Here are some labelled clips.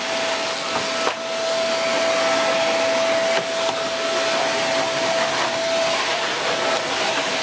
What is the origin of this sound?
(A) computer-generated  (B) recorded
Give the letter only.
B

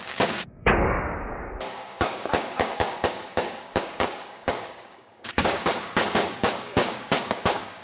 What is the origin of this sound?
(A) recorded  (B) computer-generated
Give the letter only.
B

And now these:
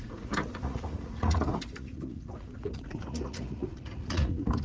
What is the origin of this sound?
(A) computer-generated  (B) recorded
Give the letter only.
A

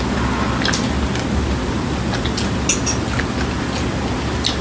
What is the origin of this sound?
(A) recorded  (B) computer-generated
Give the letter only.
A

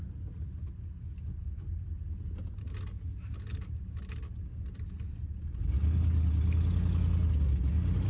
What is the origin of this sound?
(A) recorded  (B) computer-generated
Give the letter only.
A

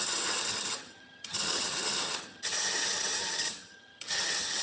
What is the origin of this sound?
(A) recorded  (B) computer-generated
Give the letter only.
B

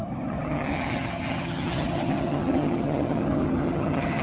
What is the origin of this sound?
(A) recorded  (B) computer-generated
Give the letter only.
B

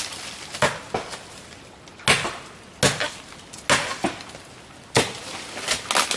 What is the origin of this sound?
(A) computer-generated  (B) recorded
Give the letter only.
B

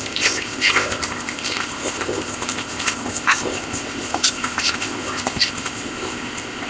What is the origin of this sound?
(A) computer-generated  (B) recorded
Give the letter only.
A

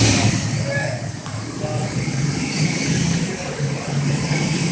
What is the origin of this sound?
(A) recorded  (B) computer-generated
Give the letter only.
B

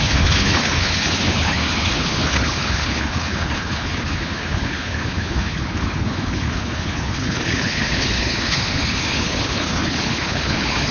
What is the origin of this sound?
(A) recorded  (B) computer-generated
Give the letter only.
B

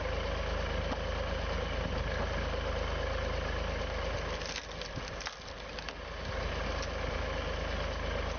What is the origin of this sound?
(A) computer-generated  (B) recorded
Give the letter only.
B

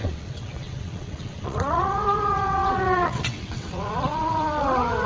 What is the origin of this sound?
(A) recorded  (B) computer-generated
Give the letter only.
B